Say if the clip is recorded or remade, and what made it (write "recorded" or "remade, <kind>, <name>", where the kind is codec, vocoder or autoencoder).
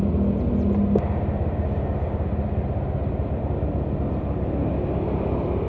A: recorded